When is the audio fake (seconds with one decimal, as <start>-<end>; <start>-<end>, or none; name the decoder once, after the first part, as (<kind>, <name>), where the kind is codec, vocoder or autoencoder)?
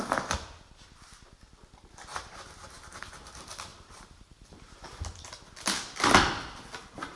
2.1-3.1 (vocoder, BigVGAN v2); 3.7-5.0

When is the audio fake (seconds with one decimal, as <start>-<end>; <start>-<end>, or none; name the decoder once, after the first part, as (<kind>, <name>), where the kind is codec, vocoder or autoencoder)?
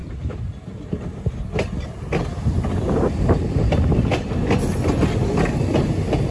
none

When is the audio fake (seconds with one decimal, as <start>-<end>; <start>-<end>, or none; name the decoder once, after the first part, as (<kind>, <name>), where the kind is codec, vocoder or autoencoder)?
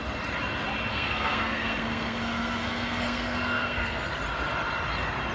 0.9-4.1 (codec, SNAC)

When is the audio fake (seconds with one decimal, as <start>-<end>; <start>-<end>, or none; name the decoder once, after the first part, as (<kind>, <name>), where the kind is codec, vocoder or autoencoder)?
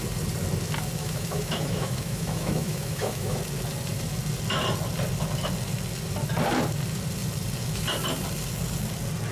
1.0-3.4 (autoencoder, DAC-VAE)